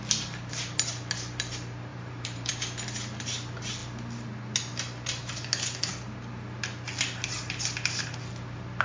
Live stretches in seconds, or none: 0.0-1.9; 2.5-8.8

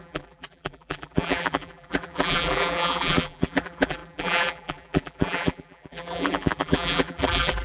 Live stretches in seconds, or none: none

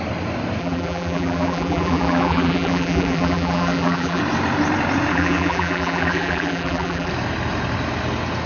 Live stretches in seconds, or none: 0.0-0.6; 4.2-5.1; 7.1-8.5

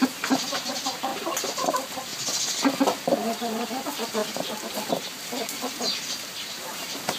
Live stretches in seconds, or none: 2.1-3.0; 4.2-4.9

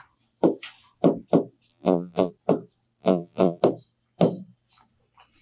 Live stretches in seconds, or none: 0.0-1.7; 2.3-3.0; 3.6-5.4

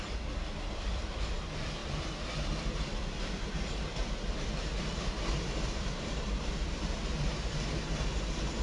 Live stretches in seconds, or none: none

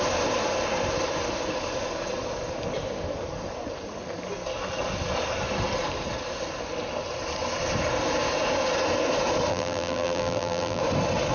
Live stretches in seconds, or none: 0.0-9.5; 10.8-11.3